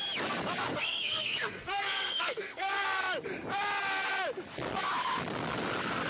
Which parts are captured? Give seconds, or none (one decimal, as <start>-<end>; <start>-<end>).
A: 0.0-0.7; 3.0-6.1